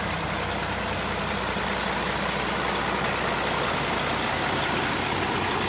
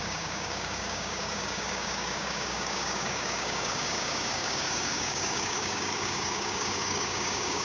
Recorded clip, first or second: first